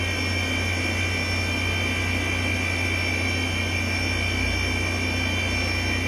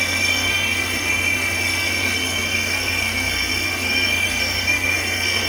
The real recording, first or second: first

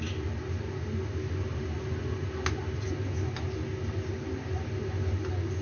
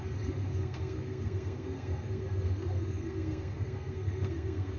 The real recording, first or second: first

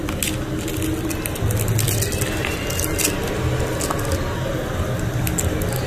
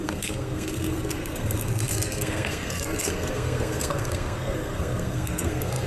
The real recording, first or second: first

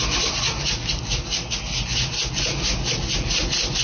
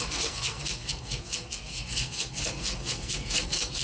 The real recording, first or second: first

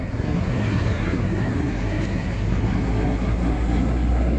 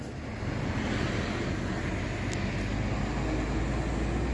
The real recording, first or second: second